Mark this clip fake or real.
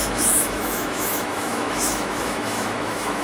fake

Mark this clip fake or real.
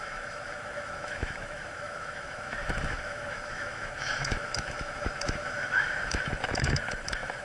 fake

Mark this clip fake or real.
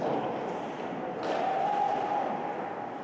real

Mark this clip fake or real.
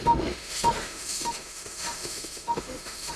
fake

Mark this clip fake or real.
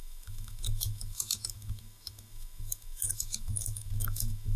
fake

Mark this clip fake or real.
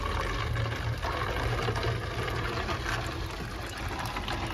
real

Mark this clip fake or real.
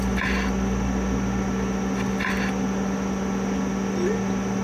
real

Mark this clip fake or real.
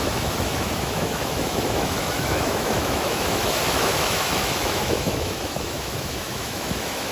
fake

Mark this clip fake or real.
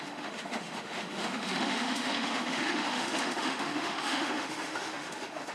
fake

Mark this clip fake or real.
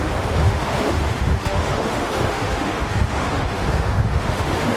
fake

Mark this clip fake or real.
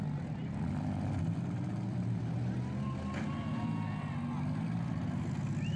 real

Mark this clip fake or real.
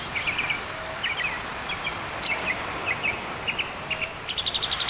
real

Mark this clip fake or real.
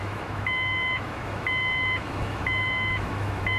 fake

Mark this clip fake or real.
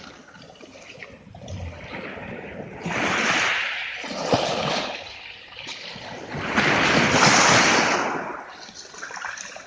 real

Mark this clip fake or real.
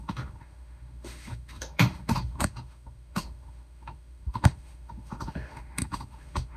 fake